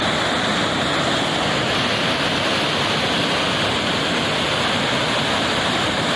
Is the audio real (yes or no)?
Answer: yes